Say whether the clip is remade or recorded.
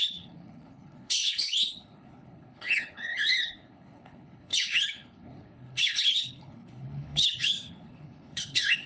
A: remade